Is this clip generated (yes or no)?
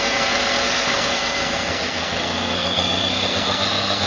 yes